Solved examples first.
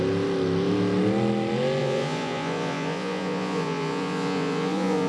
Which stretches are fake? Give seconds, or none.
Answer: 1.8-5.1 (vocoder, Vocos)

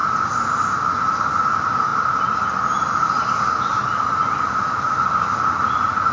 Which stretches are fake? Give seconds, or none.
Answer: none

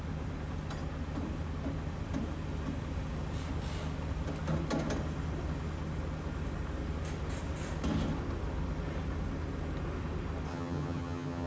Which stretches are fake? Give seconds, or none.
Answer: 10.5-11.5 (vocoder, HiFi-GAN)